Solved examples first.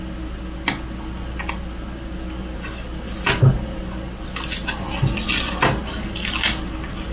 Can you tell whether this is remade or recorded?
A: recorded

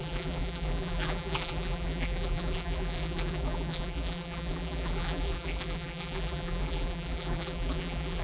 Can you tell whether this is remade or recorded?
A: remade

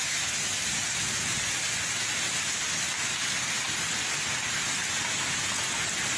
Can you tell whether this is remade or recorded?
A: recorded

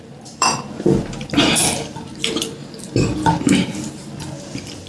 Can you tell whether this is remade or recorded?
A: remade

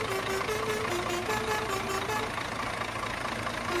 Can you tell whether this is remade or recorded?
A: recorded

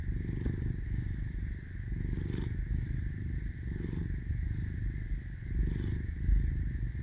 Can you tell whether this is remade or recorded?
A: remade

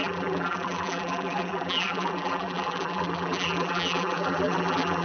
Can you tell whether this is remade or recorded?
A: remade